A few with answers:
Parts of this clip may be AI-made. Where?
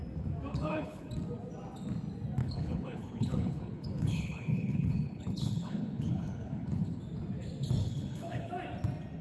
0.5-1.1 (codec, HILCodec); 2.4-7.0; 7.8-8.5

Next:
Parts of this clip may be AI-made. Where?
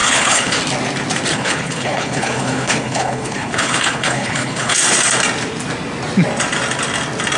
0.0-0.6 (codec, HILCodec); 1.3-4.8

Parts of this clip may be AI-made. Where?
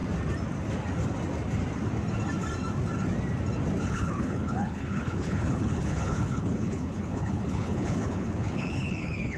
3.8-9.4 (codec, HILCodec)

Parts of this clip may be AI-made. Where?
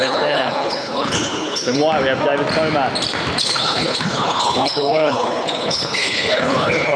0.0-1.8 (codec, HILCodec); 3.4-7.0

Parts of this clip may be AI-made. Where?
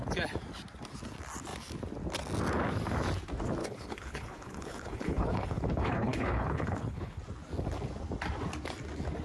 3.6-7.2 (codec, HILCodec)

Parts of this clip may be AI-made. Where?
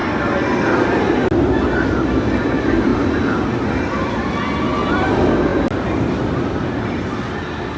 none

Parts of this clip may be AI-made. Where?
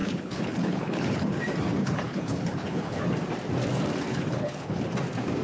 0.0-1.4 (codec, HILCodec); 1.8-3.0; 4.1-4.8